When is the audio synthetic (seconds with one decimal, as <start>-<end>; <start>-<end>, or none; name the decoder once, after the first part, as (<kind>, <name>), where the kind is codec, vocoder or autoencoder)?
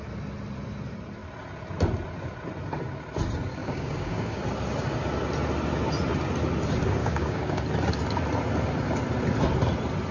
3.6-4.4 (codec, DAC); 7.0-7.6